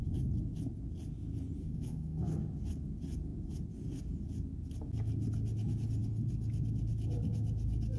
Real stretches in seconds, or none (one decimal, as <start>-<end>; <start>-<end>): 0.0-1.6; 2.4-8.0